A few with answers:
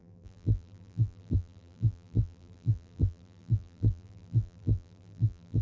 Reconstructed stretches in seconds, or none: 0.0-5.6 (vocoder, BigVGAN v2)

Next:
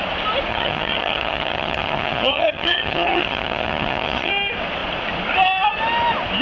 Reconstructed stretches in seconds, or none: 0.5-4.3 (vocoder, HiFi-GAN)

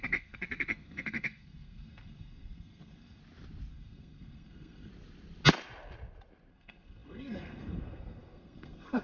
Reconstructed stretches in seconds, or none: 0.0-3.2 (codec, SNAC); 3.7-4.9; 6.5-9.0

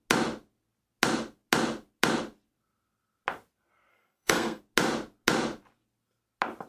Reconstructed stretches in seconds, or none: 3.9-4.6 (codec, SNAC)

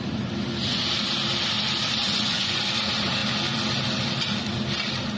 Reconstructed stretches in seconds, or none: 2.0-2.6 (vocoder, Vocos)